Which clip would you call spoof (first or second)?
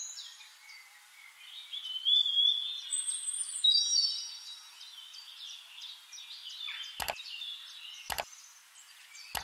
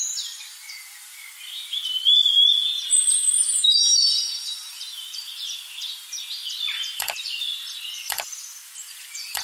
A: second